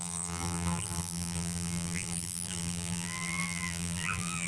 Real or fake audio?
fake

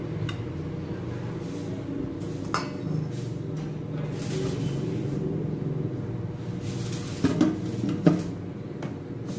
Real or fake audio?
real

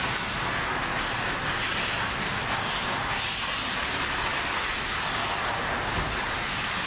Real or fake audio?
real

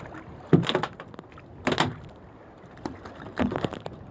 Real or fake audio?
real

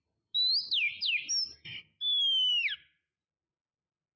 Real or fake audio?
real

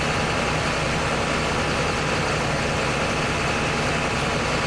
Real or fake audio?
real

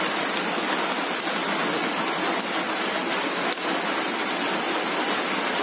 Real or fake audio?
real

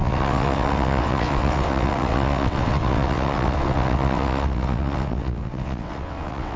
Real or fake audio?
fake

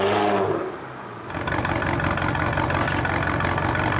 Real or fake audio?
real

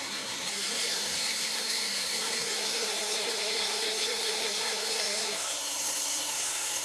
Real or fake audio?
fake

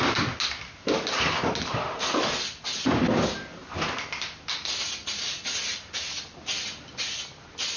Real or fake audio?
real